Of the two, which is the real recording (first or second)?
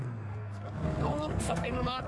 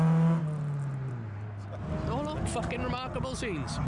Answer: second